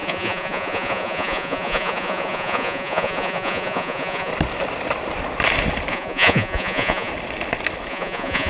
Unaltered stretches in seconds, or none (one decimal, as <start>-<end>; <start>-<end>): 4.3-5.9; 7.1-7.9